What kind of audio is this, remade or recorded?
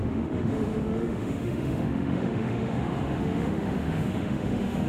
remade